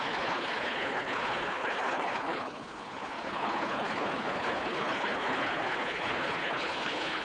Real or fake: fake